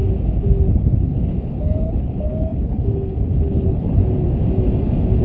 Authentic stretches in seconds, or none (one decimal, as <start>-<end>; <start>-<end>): 0.0-0.7; 4.0-5.2